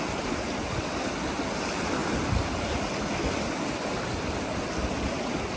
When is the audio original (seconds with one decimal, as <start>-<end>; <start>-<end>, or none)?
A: 0.0-5.6